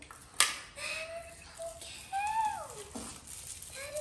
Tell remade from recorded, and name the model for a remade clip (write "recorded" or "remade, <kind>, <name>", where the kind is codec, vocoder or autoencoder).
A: recorded